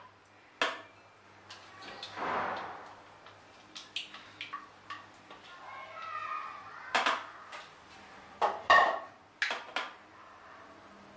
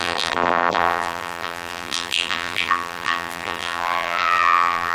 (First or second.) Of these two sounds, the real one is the first